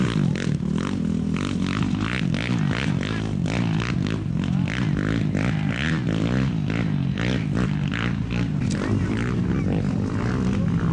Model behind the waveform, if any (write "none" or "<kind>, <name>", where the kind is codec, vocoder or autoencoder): none